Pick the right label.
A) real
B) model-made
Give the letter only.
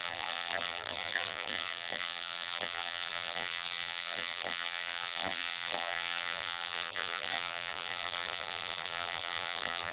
B